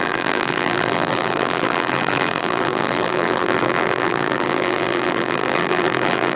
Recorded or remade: remade